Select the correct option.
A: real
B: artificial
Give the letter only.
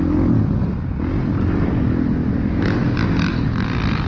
A